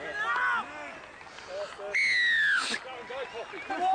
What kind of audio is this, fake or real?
real